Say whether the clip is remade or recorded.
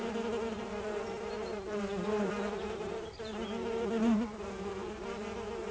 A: remade